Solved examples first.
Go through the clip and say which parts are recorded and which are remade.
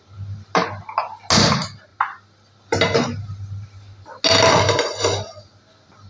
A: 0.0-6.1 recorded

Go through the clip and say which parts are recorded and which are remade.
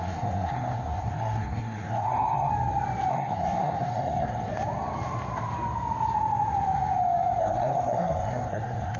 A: 0.0-2.5 remade; 2.5-3.1 recorded; 3.1-4.5 remade; 4.5-7.4 recorded; 7.4-9.0 remade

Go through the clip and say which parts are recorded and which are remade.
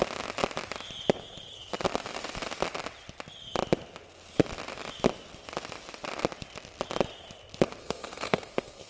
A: 0.0-7.8 recorded; 7.8-8.9 remade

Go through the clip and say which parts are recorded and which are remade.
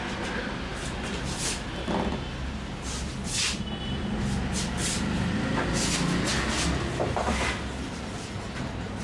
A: 0.0-9.0 recorded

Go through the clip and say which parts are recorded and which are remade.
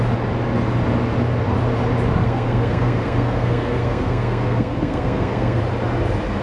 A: 0.0-2.2 recorded; 2.2-5.6 remade; 5.6-6.4 recorded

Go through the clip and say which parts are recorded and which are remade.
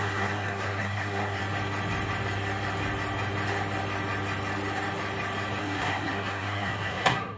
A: 0.0-1.4 remade; 1.4-5.6 recorded; 5.6-7.4 remade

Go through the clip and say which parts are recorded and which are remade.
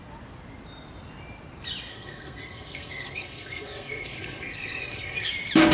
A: 0.0-1.9 recorded; 1.9-5.3 remade; 5.3-5.7 recorded